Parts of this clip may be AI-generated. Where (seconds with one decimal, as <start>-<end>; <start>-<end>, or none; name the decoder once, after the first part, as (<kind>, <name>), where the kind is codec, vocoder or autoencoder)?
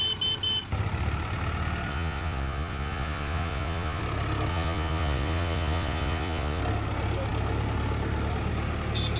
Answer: 1.9-4.0 (vocoder, Vocos); 4.5-6.6